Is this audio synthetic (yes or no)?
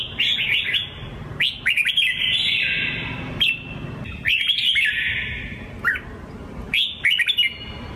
no